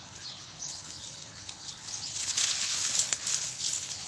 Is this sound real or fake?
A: fake